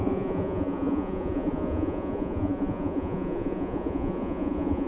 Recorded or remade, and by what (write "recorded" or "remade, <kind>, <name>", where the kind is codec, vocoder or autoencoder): remade, vocoder, Vocos